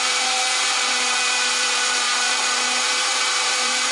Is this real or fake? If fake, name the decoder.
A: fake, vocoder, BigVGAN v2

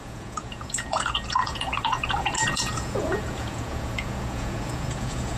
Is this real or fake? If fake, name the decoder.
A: fake, vocoder, Vocos